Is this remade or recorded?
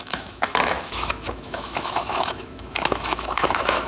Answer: remade